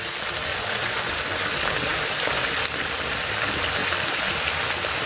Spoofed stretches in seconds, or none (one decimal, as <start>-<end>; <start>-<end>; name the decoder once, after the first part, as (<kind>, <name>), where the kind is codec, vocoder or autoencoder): 0.5-1.2 (vocoder, Vocos)